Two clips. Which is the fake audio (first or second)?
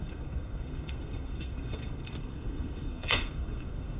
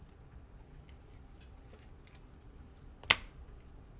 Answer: first